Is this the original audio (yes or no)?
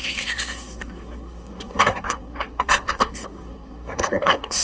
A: no